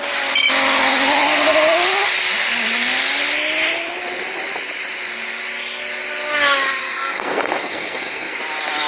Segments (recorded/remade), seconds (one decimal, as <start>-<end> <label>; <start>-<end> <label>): 0.0-6.8 recorded; 6.8-8.4 remade; 8.4-8.9 recorded